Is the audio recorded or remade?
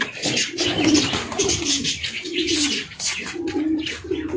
remade